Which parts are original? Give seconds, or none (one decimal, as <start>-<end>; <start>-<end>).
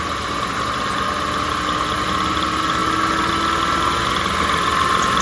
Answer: 0.0-5.2